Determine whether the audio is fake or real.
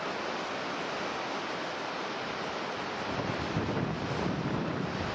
real